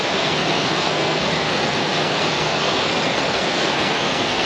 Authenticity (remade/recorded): remade